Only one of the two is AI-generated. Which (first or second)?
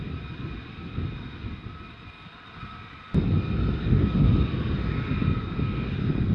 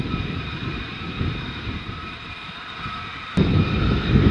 second